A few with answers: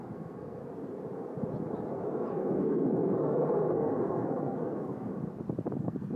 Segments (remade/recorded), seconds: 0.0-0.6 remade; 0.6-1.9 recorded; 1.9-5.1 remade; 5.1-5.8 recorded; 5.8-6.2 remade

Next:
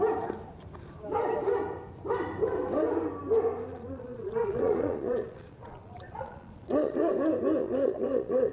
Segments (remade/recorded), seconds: 0.0-3.7 recorded; 3.7-7.1 remade; 7.1-7.6 recorded; 7.6-8.5 remade

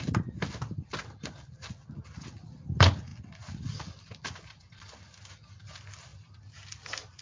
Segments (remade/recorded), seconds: 0.0-7.2 recorded